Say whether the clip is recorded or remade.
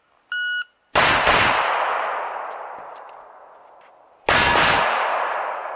recorded